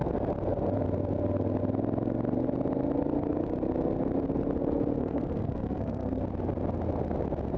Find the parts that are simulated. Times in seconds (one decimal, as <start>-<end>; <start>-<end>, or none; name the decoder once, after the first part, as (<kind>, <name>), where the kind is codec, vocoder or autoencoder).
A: 5.0-6.2 (codec, SNAC)